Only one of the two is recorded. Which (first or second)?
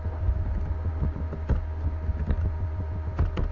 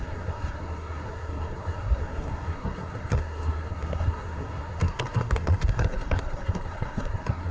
first